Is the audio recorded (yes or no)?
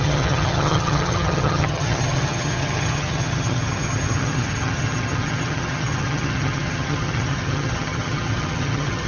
no